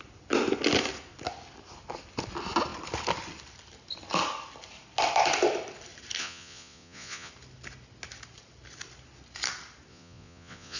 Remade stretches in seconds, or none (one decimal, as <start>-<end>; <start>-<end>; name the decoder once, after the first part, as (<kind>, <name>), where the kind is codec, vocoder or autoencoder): 6.2-7.3 (vocoder, Vocos); 9.9-10.8